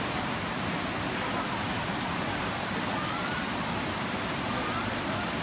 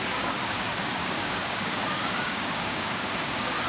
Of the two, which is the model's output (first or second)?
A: second